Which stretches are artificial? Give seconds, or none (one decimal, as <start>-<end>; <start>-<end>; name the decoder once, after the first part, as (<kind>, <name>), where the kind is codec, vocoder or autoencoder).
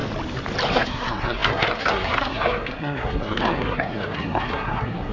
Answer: 0.7-5.1 (codec, SNAC)